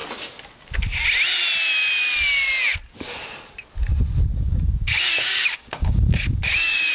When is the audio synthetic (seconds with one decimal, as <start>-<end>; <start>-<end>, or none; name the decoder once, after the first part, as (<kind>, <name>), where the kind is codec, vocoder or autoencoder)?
4.3-6.9 (codec, DAC)